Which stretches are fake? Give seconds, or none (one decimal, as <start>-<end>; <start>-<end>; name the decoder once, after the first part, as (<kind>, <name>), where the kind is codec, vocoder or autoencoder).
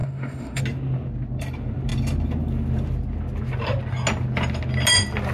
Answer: 0.0-0.6 (autoencoder, DAC-VAE)